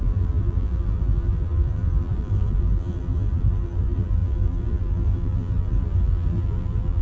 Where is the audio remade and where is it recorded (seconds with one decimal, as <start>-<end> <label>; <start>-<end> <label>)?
0.0-7.0 remade